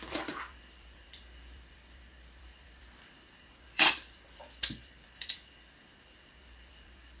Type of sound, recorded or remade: remade